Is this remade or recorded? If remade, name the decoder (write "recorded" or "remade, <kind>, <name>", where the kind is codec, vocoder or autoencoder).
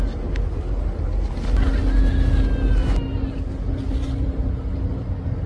recorded